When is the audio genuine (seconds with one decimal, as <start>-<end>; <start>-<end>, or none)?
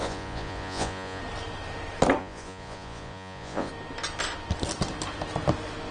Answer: 1.2-2.2; 3.7-5.9